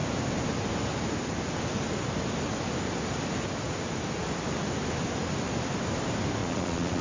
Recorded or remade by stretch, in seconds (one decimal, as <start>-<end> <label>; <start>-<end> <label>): 0.0-6.4 recorded; 6.4-7.0 remade